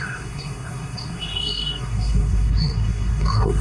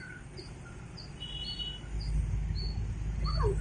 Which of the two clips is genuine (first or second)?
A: second